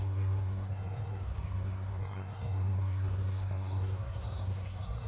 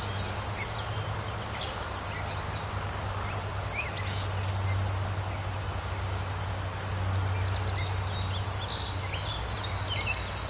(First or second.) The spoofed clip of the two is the first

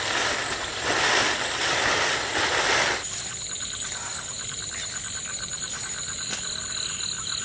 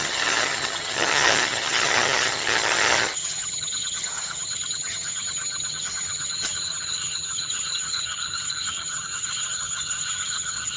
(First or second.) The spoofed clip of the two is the second